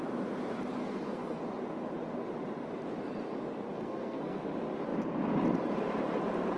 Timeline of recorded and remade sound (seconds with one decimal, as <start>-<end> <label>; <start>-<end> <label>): 0.0-0.8 recorded; 0.8-1.4 remade; 1.4-3.7 recorded; 3.7-4.4 remade; 4.4-6.6 recorded